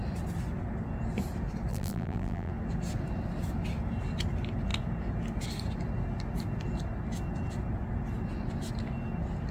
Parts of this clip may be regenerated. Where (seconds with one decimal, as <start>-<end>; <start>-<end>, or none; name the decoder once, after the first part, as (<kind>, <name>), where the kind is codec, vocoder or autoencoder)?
1.7-2.5 (vocoder, BigVGAN v2)